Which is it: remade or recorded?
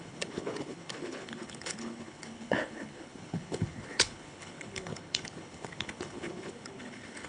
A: remade